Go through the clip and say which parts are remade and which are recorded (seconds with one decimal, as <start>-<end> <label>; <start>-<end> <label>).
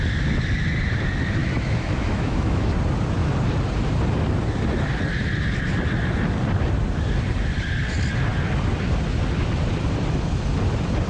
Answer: 0.0-1.4 recorded; 1.4-2.7 remade; 2.7-11.1 recorded